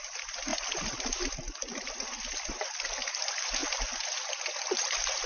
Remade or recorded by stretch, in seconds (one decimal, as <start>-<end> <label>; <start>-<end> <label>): 0.0-5.3 recorded